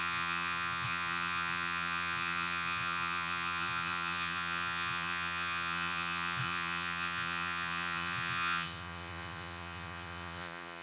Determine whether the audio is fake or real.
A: fake